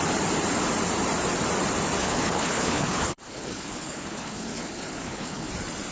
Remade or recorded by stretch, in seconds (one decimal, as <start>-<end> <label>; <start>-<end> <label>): 0.0-2.0 recorded; 2.0-5.5 remade; 5.5-5.9 recorded